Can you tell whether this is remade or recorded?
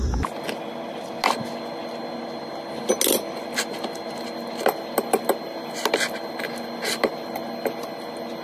recorded